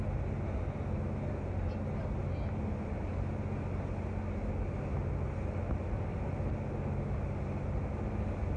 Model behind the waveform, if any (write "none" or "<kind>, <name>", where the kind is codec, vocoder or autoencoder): none